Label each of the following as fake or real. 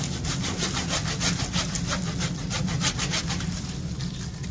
real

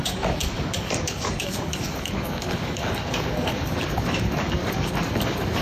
fake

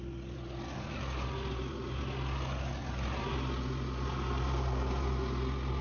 real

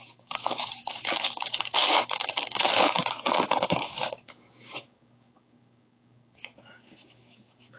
fake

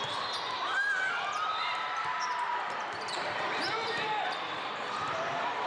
fake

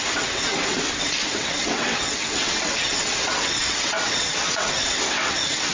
fake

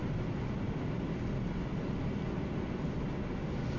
real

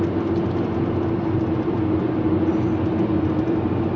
real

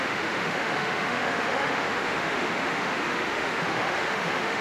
fake